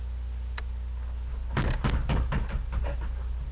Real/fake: real